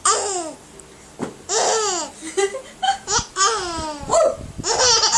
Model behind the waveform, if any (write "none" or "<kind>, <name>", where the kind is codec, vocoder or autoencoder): none